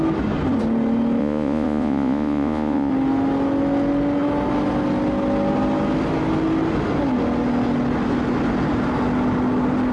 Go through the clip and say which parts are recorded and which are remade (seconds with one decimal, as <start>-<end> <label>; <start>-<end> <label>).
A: 0.0-1.2 recorded; 1.2-2.9 remade; 2.9-9.9 recorded